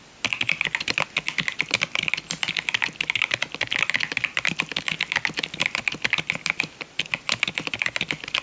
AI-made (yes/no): no